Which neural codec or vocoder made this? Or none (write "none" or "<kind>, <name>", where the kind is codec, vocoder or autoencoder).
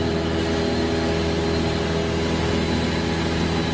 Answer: none